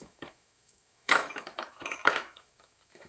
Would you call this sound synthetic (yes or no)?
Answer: yes